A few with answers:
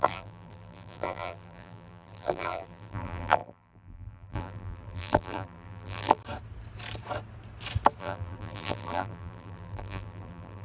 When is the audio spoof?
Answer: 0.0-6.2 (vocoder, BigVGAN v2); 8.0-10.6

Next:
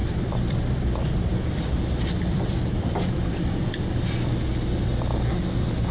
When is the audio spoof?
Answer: 0.0-3.5 (vocoder, BigVGAN v2)

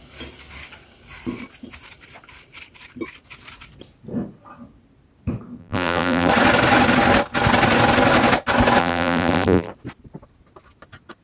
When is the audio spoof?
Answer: 5.6-6.3 (vocoder, BigVGAN v2); 8.8-9.7

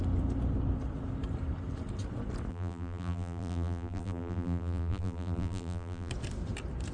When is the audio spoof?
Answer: 2.5-6.1 (vocoder, BigVGAN v2)

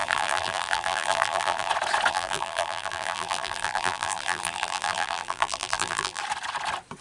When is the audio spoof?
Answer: 0.0-1.7 (vocoder, BigVGAN v2); 2.1-6.2

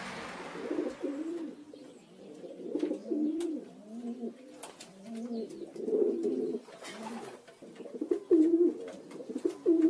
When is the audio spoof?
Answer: none